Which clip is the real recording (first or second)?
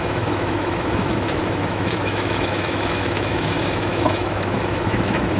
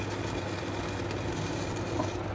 second